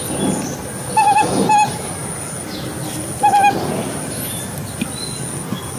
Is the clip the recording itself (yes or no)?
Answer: yes